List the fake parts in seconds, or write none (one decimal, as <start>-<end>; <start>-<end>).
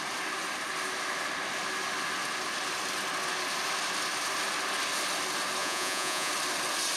5.6-6.3